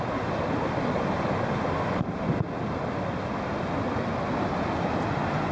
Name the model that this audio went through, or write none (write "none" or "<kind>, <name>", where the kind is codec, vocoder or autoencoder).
none